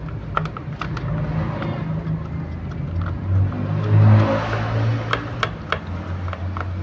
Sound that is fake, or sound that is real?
real